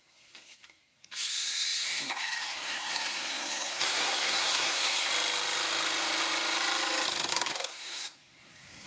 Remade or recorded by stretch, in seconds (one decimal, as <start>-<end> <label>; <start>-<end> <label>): 0.0-5.1 remade; 5.1-7.3 recorded; 7.3-8.9 remade